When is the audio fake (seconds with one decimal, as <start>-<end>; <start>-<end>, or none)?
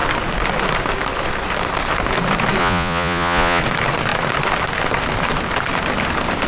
2.6-3.6